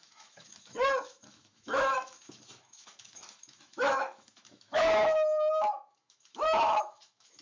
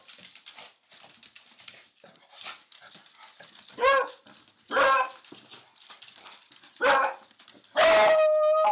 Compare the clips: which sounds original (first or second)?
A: second